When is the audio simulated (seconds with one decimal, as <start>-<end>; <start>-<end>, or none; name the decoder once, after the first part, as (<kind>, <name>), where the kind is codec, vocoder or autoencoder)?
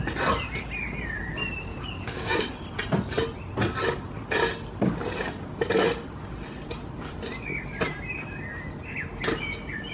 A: 1.7-2.4 (codec, DAC)